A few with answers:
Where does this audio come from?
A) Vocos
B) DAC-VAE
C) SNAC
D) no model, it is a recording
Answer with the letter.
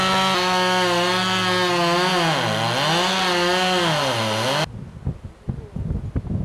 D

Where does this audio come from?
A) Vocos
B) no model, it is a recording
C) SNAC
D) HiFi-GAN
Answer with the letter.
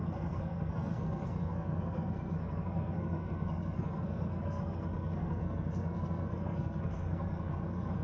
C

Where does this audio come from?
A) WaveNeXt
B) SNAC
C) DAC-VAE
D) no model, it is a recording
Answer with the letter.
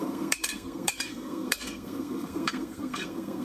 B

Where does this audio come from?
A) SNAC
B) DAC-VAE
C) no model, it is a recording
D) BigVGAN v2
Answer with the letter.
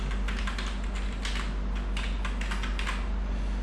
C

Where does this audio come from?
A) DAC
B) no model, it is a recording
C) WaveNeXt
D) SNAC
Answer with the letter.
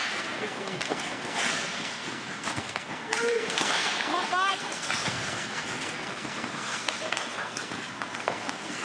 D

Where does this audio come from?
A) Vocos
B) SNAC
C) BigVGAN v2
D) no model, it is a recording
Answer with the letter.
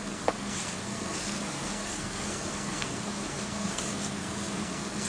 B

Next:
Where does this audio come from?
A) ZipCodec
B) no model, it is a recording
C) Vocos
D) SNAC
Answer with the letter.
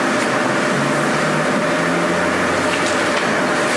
B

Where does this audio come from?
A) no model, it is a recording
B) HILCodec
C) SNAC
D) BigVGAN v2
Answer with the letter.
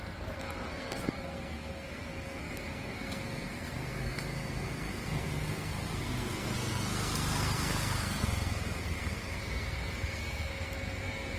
C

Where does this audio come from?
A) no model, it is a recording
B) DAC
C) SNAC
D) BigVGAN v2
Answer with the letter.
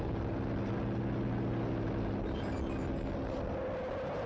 A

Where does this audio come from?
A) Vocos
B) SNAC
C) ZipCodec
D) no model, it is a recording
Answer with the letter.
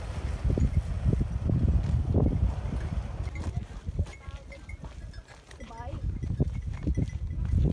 D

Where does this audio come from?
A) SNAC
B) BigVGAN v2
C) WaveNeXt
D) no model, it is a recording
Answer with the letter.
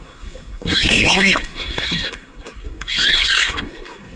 A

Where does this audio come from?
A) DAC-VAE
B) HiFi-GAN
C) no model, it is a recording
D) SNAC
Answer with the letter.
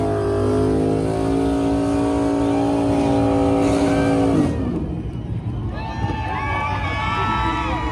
C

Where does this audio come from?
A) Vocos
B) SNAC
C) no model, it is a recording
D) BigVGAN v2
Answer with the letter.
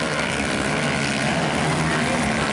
C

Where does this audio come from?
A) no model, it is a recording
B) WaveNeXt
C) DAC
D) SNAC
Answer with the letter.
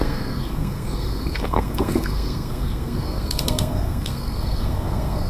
D